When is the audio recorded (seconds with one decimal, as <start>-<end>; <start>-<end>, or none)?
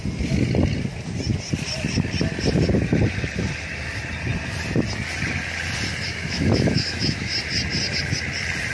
0.0-6.1; 7.3-8.7